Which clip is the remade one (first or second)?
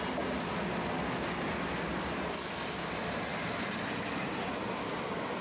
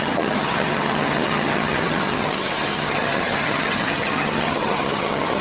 second